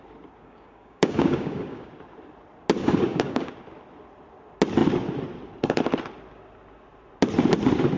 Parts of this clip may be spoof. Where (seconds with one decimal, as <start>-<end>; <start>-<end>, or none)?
0.4-1.9; 2.8-3.5